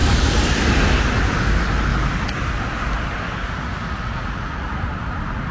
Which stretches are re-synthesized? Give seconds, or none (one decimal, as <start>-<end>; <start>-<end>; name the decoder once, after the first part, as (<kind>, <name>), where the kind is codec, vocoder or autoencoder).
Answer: 3.4-4.7 (vocoder, Vocos)